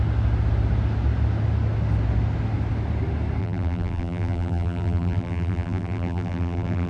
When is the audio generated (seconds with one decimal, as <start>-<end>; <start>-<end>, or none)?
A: 3.4-6.9